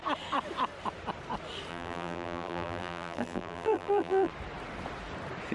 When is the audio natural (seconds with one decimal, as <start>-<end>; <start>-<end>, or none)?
0.0-1.7; 4.3-5.5